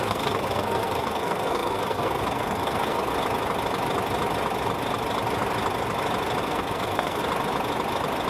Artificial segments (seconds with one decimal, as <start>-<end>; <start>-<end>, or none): 0.0-3.1; 6.4-7.2